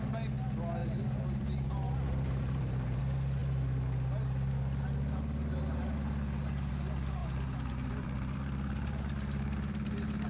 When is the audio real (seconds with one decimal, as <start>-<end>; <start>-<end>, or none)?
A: 0.0-0.8; 3.0-7.2